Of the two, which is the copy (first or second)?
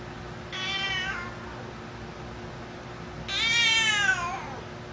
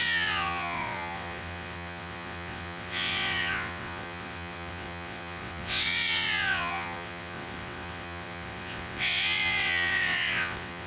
second